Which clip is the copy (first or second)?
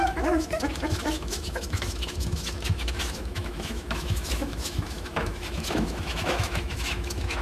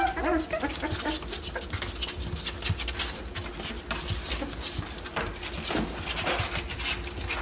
first